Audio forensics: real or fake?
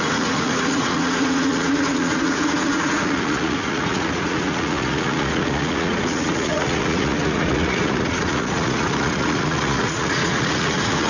fake